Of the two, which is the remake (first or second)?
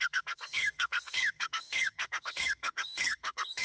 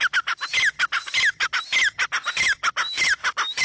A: first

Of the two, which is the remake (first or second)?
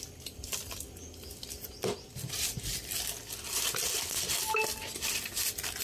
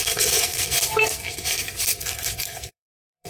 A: second